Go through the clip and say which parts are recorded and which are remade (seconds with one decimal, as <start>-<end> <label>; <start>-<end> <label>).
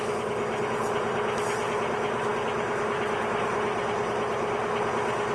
0.0-5.3 recorded